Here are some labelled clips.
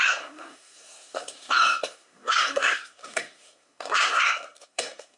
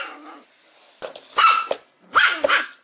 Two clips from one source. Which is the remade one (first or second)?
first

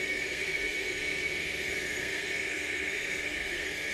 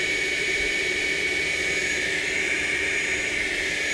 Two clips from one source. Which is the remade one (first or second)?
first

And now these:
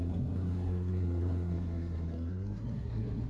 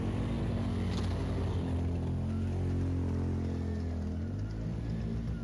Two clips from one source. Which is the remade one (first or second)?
first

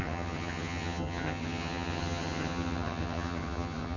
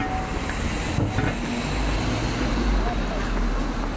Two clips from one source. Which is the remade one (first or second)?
first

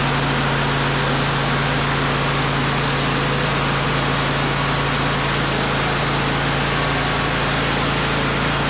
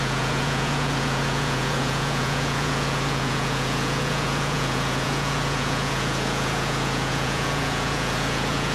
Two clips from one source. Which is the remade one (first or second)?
second